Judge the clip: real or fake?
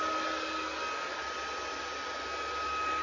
real